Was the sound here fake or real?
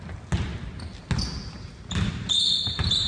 real